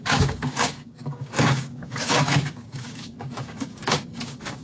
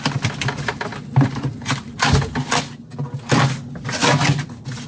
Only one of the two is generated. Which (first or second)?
first